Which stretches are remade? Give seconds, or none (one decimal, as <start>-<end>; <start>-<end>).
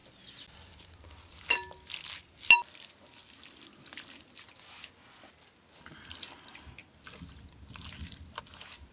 none